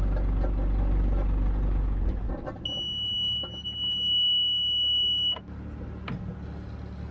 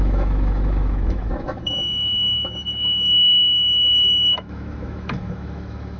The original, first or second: first